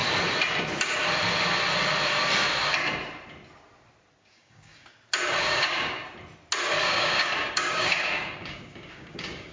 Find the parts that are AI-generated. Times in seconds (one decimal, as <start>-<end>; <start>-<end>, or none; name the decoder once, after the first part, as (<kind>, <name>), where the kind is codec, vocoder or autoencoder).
4.2-4.9 (codec, DAC); 5.4-6.0; 6.8-9.5